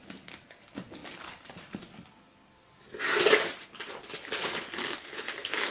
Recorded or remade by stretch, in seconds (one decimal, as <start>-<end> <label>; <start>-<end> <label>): 0.0-4.8 recorded; 4.8-5.7 remade